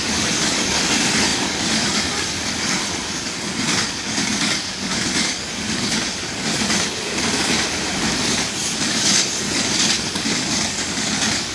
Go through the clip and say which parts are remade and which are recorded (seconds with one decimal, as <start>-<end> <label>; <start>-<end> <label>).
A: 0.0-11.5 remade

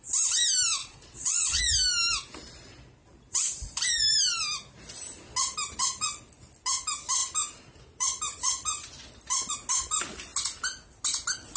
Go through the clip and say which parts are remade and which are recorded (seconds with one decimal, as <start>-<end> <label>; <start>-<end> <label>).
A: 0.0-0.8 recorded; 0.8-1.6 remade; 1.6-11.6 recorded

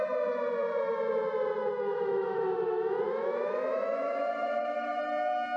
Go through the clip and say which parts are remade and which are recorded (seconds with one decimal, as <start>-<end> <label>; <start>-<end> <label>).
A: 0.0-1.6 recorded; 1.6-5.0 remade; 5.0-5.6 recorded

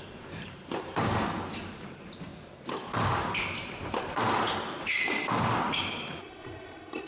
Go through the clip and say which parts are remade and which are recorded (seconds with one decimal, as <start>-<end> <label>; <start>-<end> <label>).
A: 0.0-2.3 remade; 2.3-3.8 recorded; 3.8-4.9 remade; 4.9-5.6 recorded; 5.6-7.1 remade

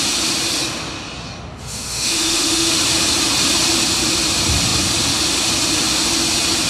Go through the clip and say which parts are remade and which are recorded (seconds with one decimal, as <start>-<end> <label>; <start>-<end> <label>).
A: 0.0-1.6 recorded; 1.6-2.8 remade; 2.8-6.7 recorded